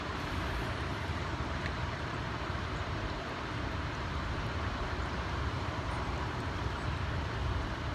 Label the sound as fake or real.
fake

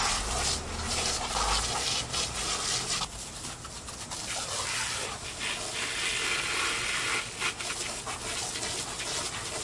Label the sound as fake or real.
real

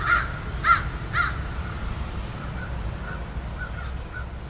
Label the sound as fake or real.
real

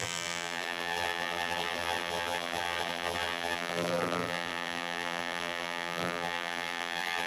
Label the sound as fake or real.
fake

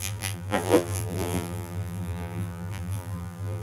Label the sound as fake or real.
fake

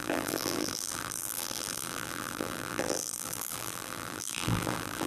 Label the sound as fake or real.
fake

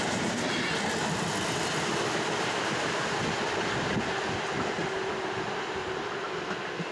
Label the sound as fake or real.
real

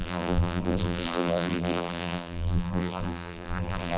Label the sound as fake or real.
fake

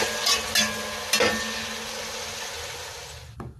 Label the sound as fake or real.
real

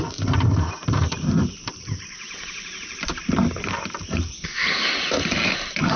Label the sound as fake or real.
fake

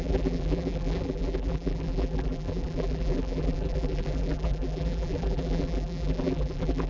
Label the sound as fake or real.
fake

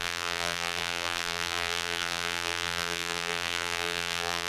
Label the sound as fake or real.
fake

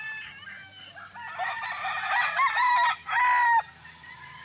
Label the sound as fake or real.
real